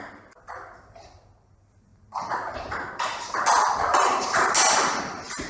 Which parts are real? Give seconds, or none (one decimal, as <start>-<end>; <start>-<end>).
0.0-3.9; 4.5-5.5